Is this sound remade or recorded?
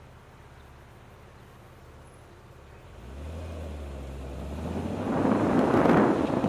recorded